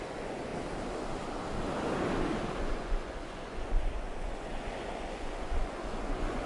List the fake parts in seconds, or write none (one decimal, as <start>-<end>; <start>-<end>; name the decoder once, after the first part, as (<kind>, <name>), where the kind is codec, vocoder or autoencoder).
0.0-0.5 (vocoder, Vocos); 2.6-6.5